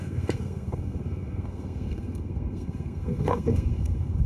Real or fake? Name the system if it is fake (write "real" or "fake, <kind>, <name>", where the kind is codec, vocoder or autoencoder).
fake, codec, SNAC